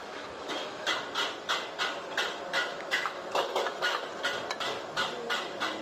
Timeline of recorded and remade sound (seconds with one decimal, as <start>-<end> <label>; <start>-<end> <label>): 0.0-0.9 remade; 0.9-2.7 recorded; 2.7-4.0 remade; 4.0-5.8 recorded